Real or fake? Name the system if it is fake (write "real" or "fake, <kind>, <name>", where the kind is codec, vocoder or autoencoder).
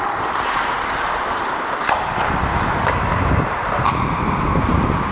real